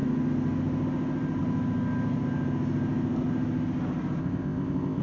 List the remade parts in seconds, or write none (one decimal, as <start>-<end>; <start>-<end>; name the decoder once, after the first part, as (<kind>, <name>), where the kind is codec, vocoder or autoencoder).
4.2-5.0 (codec, ZipCodec)